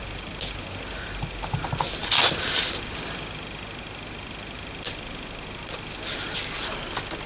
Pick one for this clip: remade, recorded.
recorded